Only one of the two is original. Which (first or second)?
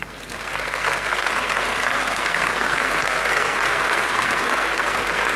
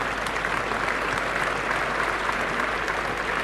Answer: second